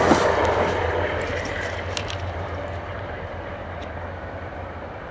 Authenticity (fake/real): fake